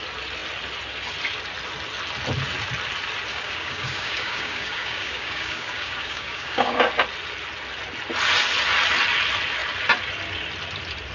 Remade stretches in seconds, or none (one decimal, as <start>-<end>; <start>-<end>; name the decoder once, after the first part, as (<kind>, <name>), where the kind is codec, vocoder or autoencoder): 3.3-6.9 (codec, DAC)